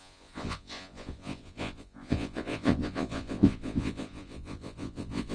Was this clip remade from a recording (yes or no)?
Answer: yes